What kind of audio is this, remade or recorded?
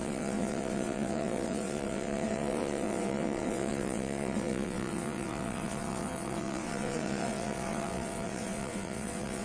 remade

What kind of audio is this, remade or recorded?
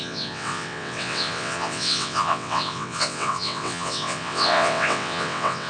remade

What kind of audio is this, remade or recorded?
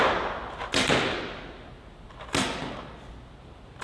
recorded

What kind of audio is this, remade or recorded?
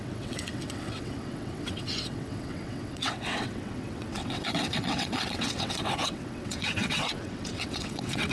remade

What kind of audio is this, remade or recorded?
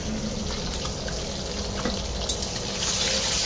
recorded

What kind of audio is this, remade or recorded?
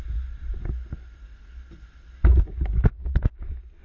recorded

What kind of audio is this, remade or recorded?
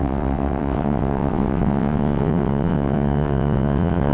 remade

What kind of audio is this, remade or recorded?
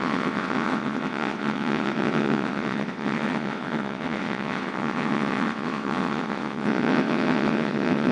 remade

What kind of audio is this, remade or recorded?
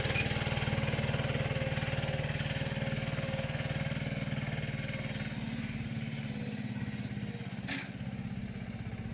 recorded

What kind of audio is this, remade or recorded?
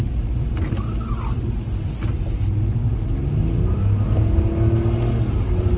recorded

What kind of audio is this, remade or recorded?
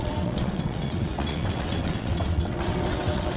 remade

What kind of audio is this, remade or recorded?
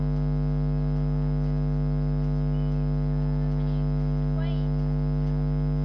recorded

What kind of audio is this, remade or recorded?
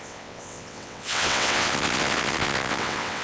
remade